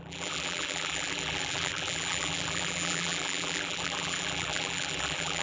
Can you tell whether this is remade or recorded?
remade